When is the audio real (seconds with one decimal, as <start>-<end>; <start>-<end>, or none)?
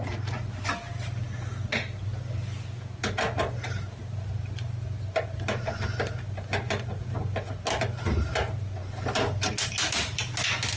0.0-10.8